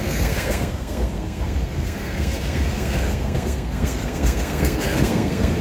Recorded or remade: remade